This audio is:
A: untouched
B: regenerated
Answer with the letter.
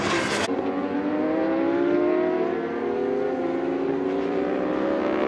A